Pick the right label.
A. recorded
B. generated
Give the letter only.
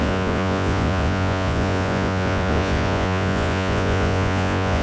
B